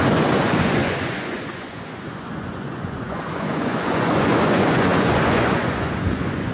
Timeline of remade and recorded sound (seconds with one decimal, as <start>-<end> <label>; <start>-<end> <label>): 0.0-6.5 remade